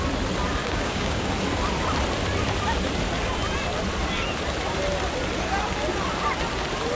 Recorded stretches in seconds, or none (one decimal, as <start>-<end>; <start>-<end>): 0.0-0.6; 1.3-6.9